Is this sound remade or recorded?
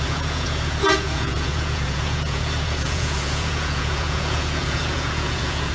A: remade